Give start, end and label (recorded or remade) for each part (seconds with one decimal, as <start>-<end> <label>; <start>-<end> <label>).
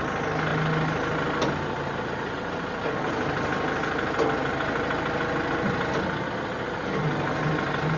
0.0-8.0 recorded